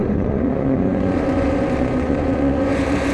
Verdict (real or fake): fake